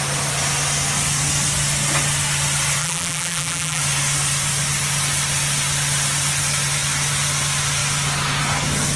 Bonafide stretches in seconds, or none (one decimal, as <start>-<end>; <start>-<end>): 0.0-2.8; 3.8-9.0

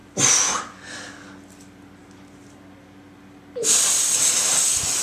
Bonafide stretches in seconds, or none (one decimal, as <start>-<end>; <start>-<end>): 0.0-5.0

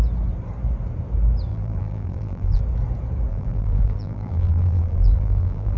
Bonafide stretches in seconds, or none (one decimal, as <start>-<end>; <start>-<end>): 0.0-1.5; 2.6-3.3

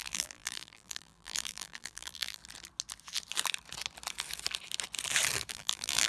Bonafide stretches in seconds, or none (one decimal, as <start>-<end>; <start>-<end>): 2.4-5.5

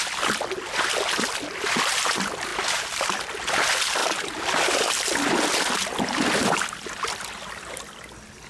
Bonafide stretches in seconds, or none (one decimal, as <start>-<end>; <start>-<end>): 0.0-2.5; 3.2-8.5

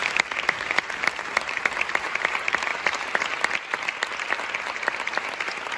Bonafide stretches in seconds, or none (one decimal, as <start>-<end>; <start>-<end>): 2.7-4.6

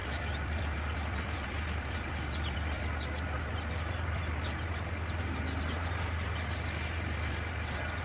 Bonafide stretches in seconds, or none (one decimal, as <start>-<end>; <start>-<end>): 2.8-8.0